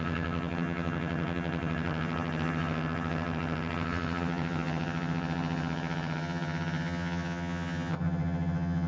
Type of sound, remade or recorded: remade